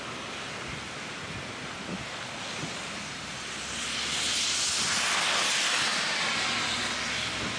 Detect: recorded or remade recorded